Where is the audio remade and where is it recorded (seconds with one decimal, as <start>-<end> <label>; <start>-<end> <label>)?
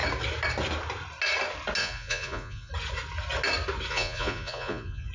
0.0-1.8 recorded; 1.8-2.7 remade; 2.7-3.9 recorded; 3.9-5.1 remade